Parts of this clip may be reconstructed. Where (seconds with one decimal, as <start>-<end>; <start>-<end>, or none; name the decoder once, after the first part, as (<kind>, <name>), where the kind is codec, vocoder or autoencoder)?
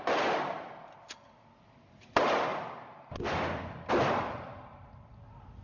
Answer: none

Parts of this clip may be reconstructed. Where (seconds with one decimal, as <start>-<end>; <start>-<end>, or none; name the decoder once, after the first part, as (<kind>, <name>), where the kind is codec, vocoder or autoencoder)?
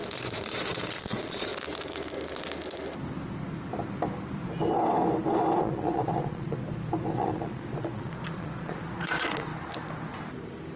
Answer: 0.0-1.5 (vocoder, Vocos); 5.6-6.6; 7.1-9.5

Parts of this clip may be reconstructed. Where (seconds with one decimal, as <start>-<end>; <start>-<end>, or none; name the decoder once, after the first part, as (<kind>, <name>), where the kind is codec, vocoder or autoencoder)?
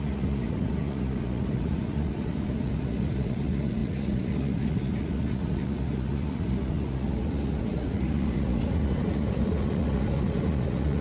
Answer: 0.0-11.0 (vocoder, Vocos)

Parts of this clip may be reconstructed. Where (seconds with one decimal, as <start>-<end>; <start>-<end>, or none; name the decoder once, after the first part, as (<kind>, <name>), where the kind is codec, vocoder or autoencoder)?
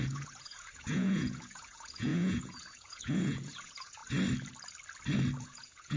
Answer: 0.0-4.0 (vocoder, Vocos); 5.4-6.0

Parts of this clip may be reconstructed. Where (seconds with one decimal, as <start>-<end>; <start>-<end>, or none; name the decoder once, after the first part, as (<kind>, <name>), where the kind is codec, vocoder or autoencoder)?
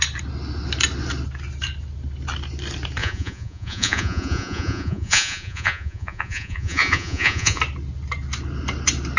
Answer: 3.0-7.6 (vocoder, Vocos)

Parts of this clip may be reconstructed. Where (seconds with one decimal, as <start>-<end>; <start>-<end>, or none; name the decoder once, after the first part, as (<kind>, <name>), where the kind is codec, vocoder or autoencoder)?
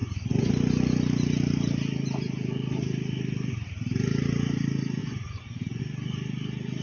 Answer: 0.0-0.5 (vocoder, Vocos); 5.0-5.8